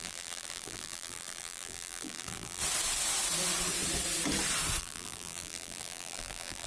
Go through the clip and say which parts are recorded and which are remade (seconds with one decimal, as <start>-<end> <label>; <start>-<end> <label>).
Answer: 0.0-2.6 remade; 2.6-4.8 recorded; 4.8-6.7 remade